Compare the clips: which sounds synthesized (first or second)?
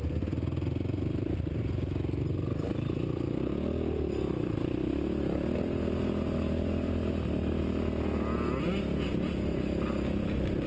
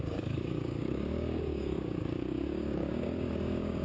second